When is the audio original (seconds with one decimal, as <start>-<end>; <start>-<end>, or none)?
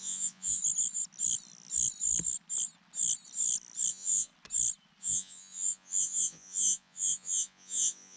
0.6-3.9; 4.3-5.0